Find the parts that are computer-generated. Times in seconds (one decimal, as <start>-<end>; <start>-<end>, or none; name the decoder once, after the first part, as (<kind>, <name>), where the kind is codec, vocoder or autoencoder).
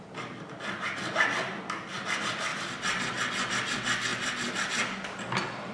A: none